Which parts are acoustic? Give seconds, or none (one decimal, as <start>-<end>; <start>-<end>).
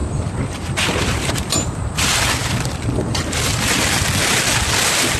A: 2.0-5.2